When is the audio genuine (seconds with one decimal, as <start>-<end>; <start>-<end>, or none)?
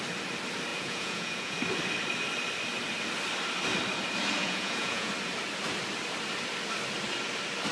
0.0-0.7; 1.6-4.4; 5.1-7.7